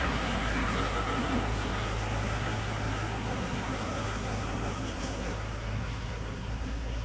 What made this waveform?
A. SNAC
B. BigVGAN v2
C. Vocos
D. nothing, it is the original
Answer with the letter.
A